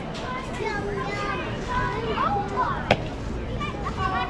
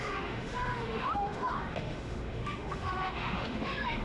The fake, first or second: second